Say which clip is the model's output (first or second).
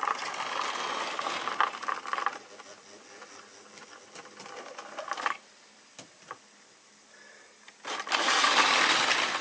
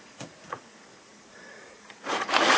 second